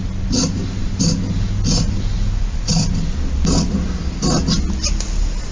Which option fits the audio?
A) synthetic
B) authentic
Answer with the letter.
B